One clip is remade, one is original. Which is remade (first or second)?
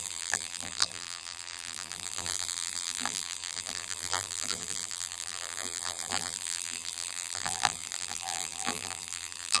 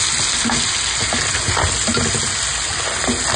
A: first